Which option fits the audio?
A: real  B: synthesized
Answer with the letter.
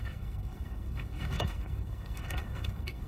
B